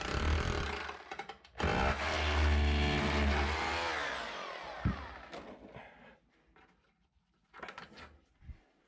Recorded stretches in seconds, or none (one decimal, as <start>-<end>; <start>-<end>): 0.0-8.9